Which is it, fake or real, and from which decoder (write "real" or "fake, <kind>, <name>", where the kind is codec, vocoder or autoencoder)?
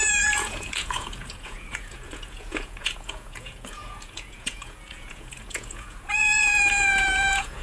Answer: fake, vocoder, Vocos